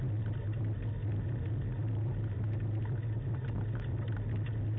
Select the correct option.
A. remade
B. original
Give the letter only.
B